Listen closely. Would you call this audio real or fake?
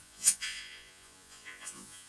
fake